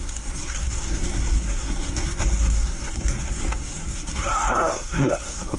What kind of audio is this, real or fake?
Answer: fake